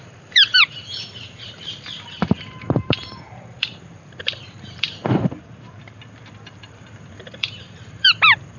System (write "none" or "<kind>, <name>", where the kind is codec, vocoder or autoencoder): vocoder, BigVGAN v2